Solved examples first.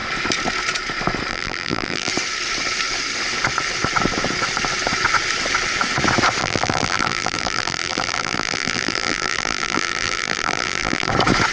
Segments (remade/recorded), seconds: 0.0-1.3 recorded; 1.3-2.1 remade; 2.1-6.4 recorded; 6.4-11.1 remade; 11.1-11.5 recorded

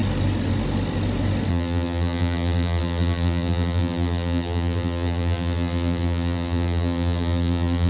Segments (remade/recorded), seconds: 0.0-1.5 recorded; 1.5-7.9 remade

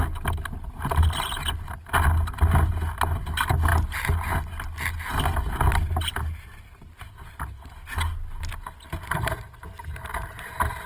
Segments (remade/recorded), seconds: 0.0-10.9 recorded

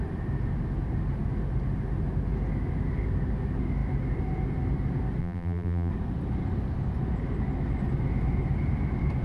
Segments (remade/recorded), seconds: 0.0-5.2 recorded; 5.2-5.9 remade; 5.9-9.2 recorded